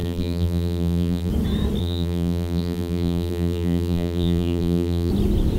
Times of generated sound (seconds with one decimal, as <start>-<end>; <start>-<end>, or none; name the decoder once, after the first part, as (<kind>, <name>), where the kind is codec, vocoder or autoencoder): 0.0-1.3 (vocoder, BigVGAN v2); 1.8-5.1